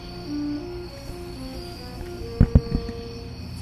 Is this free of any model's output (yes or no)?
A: yes